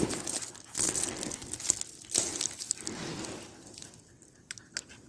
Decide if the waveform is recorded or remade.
recorded